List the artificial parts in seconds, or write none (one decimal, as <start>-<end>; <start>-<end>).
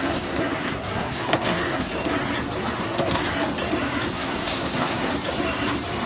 0.0-1.9; 2.8-3.2; 4.1-5.1